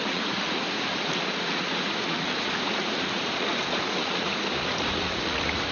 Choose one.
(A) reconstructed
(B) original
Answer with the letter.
A